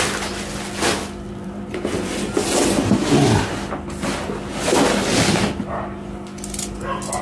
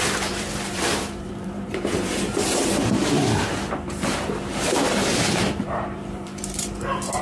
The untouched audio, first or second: first